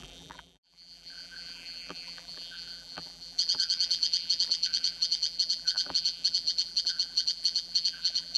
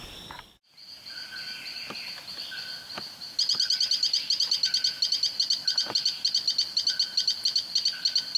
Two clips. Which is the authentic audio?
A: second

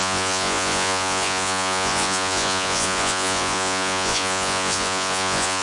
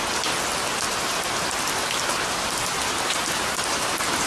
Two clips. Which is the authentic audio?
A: second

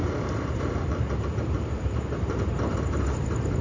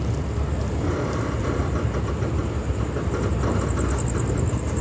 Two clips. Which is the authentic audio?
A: second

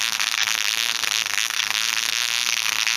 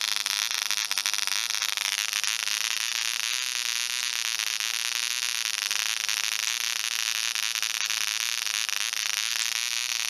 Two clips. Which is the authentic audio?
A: second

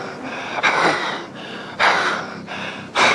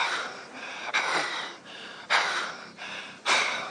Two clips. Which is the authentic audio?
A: first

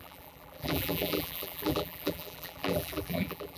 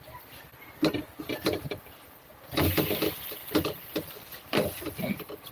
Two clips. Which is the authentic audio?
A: second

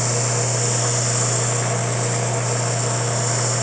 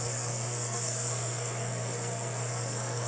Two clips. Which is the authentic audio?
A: first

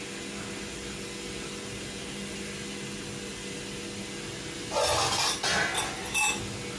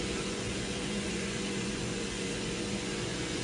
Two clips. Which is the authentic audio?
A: first